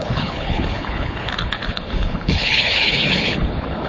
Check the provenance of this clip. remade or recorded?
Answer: remade